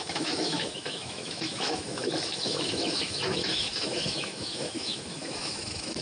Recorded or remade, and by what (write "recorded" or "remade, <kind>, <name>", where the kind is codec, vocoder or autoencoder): remade, autoencoder, DAC-VAE